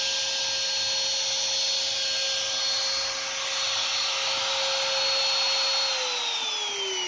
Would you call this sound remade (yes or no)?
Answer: no